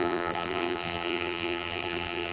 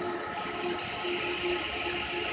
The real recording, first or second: second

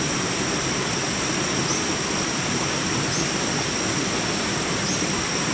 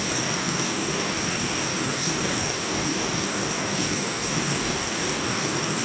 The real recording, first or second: first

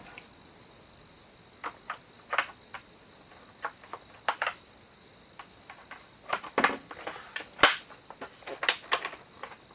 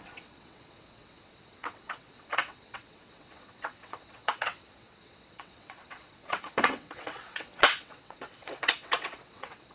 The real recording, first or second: first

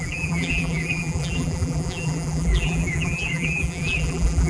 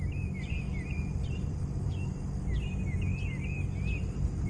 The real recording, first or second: second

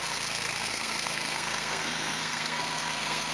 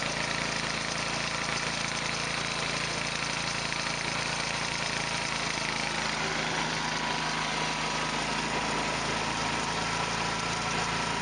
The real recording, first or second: second